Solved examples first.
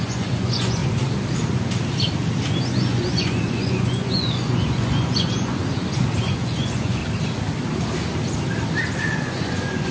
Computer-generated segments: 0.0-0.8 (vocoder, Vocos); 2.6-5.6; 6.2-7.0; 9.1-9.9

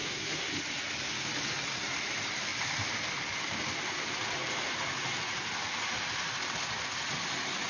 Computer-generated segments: 0.0-0.6 (codec, SNAC)

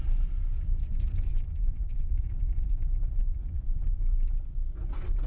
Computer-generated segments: 0.5-2.8 (vocoder, Vocos); 3.2-3.8

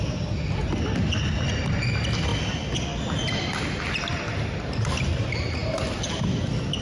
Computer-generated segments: none